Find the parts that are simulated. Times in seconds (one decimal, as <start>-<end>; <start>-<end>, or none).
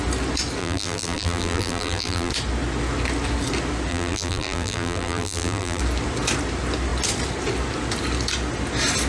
0.6-2.3; 3.9-5.8